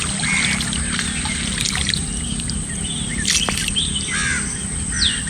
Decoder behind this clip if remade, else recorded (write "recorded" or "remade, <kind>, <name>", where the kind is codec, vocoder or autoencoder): recorded